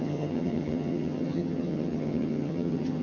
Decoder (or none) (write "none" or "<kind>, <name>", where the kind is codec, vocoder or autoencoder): vocoder, HiFi-GAN